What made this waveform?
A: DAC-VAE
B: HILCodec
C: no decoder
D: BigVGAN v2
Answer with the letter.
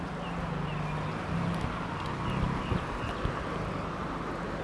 C